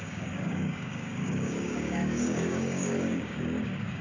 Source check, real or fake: fake